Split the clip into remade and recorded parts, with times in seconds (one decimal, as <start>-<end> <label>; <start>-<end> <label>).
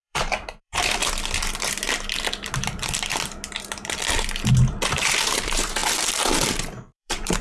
0.0-1.0 remade; 1.0-4.9 recorded; 4.9-5.8 remade; 5.8-6.3 recorded; 6.3-7.4 remade